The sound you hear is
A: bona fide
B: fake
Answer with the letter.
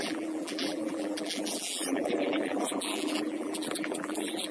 B